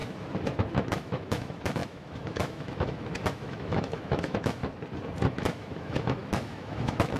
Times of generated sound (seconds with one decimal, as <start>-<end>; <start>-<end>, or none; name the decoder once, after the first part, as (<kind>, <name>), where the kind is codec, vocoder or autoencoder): 0.7-4.6 (autoencoder, DAC-VAE); 5.3-7.2